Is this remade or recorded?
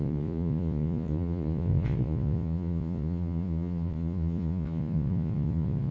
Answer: remade